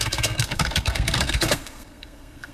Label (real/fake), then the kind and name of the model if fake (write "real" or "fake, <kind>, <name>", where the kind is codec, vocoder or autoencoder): fake, codec, SNAC